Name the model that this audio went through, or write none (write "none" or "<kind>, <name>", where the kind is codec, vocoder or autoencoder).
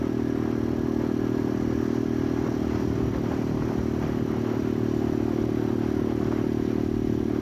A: none